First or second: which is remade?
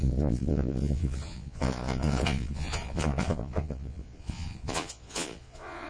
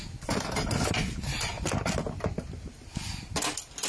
first